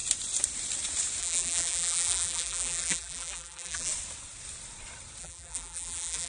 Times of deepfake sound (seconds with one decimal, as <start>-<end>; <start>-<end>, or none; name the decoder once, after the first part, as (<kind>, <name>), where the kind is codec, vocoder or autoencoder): 1.2-3.9 (vocoder, BigVGAN v2); 5.2-6.3